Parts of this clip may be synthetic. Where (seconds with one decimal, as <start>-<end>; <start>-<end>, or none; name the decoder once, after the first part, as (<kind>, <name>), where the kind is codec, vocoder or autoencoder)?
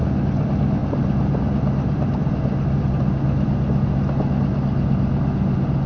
none